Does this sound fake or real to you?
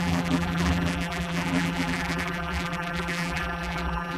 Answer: fake